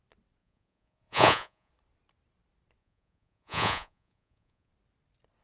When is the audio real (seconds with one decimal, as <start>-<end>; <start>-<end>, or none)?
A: 0.0-0.4; 1.7-2.8; 4.7-5.4